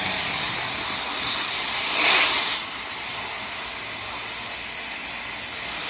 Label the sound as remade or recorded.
recorded